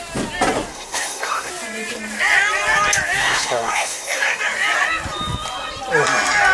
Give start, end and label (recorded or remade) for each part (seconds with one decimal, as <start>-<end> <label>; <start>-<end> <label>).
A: 0.0-0.7 recorded; 0.7-1.5 remade; 1.5-3.2 recorded; 3.2-4.4 remade; 4.4-6.5 recorded